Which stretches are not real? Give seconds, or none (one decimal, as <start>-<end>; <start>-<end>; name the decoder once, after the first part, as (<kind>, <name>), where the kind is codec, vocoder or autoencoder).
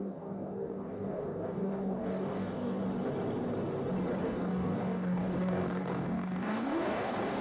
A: 0.0-2.8 (codec, DAC); 4.2-7.4